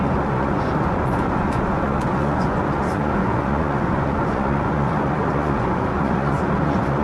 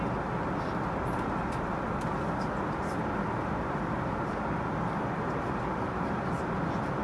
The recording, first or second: second